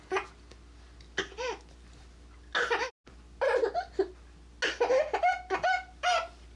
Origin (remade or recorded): recorded